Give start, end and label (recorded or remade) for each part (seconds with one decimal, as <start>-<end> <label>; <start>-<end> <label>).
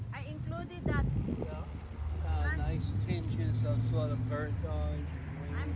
0.0-5.8 recorded